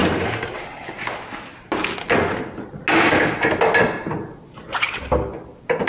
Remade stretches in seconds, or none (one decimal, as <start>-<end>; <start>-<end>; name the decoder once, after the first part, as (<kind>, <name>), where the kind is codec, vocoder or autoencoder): none